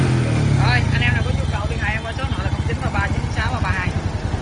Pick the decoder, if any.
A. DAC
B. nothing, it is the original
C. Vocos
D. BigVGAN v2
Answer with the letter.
B